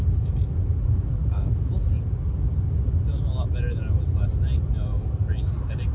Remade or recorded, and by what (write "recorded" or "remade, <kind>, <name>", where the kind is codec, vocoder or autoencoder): recorded